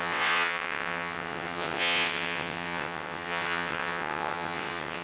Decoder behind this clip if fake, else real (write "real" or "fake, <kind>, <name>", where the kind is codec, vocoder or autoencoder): fake, vocoder, WaveNeXt